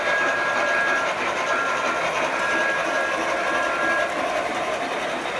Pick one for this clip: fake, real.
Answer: real